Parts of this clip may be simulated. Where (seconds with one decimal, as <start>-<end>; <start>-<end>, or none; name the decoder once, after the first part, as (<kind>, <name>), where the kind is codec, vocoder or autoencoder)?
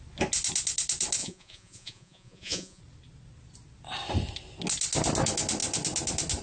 1.2-2.8 (vocoder, Vocos)